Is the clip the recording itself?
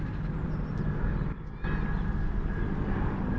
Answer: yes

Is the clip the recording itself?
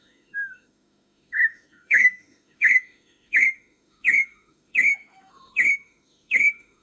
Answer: no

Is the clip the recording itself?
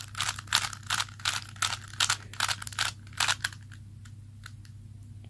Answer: yes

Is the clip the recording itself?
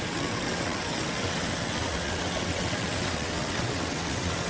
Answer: no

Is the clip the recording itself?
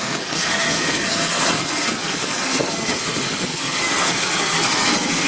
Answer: no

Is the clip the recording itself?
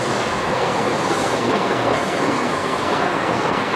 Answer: no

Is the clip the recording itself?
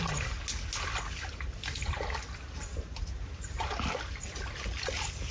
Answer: yes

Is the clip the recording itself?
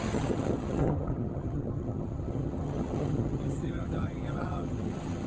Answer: no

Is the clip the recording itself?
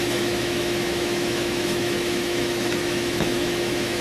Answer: no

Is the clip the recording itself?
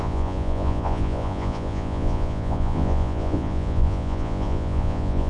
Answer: no